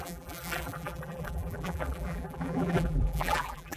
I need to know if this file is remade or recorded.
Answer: remade